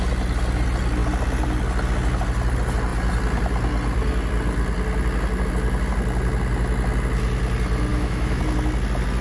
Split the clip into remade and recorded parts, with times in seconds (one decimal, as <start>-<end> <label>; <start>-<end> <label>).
0.0-7.9 recorded; 7.9-8.4 remade; 8.4-9.2 recorded